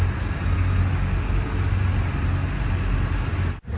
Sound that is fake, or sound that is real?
real